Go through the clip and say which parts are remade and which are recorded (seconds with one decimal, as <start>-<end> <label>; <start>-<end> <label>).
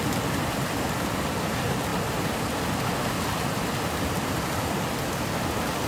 0.0-5.9 remade